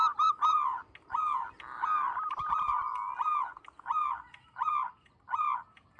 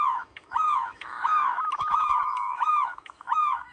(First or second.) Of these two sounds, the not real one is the second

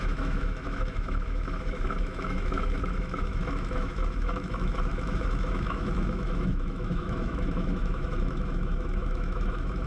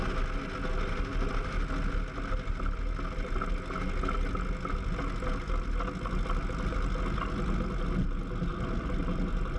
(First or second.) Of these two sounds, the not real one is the first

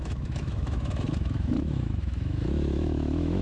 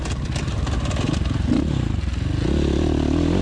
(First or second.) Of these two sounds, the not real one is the first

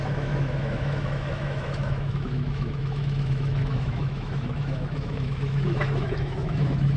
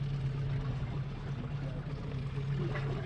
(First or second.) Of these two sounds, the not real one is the first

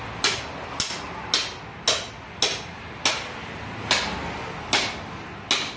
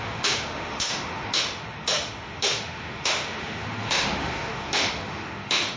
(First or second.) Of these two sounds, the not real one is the second